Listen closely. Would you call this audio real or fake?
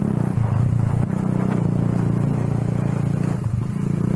real